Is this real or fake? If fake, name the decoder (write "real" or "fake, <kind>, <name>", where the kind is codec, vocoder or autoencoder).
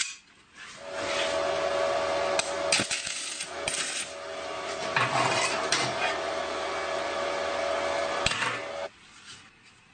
real